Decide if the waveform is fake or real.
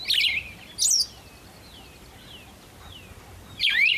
real